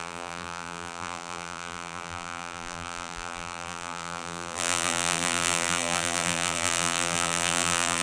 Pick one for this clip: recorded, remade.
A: remade